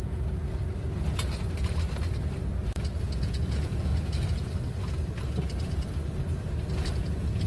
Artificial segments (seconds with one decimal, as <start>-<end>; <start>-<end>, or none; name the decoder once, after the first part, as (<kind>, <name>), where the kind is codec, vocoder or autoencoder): 0.0-0.4 (vocoder, Vocos); 2.7-3.9; 6.7-7.5